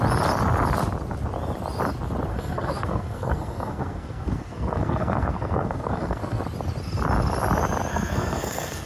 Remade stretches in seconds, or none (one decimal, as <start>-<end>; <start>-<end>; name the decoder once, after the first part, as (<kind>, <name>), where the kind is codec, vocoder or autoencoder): 2.3-6.4 (codec, SNAC); 7.9-8.9

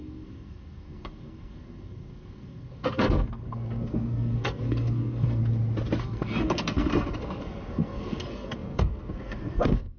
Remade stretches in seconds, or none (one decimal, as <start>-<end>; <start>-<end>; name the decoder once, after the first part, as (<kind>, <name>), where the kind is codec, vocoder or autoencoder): 0.0-5.4 (codec, SNAC); 6.0-10.0

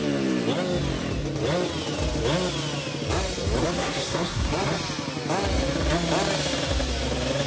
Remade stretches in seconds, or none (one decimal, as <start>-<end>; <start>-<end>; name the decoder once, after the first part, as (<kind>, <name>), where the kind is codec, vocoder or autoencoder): 3.6-4.5 (codec, SNAC)

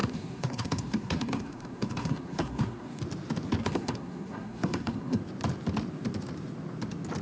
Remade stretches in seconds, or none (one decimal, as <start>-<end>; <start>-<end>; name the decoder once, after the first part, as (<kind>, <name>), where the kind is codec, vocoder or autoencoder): 0.0-3.0 (codec, SNAC); 3.6-5.2

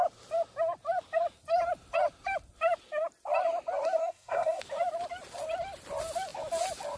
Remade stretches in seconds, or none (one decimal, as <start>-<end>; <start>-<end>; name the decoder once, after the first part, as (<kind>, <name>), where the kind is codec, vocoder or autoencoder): 4.0-4.6 (codec, SNAC)

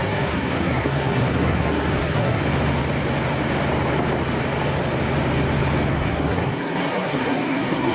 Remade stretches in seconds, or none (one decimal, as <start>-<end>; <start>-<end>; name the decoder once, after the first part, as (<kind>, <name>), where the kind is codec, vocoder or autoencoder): 0.0-2.4 (codec, SNAC); 5.9-7.9

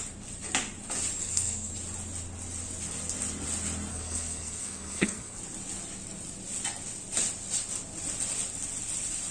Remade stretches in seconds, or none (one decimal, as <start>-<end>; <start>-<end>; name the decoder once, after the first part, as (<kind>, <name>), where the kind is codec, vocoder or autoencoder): 1.2-1.7 (codec, SNAC); 3.9-5.4

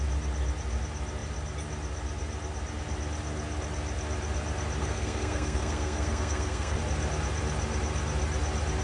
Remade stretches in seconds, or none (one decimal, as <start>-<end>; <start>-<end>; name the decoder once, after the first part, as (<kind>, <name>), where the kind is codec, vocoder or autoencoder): 4.8-6.8 (codec, SNAC)